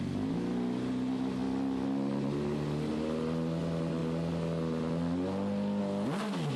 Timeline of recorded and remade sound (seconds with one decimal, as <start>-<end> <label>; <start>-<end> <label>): 0.0-6.6 recorded